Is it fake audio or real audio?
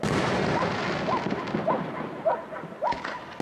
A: real